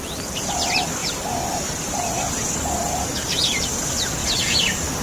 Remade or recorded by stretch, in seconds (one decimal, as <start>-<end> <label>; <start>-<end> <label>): 0.0-1.0 recorded; 1.0-2.3 remade; 2.3-5.0 recorded